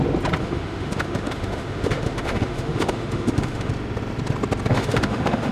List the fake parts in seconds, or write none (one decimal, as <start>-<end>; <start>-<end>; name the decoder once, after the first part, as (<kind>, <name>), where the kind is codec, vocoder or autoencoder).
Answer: 0.4-3.7 (autoencoder, DAC-VAE); 4.7-5.5